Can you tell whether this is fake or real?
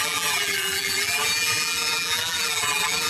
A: fake